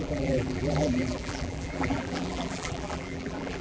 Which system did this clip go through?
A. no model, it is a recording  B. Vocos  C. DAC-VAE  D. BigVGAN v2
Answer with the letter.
D